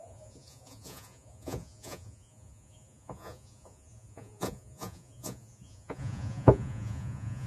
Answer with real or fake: fake